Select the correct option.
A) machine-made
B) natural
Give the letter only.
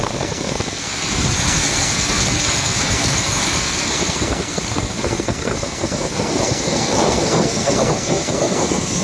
A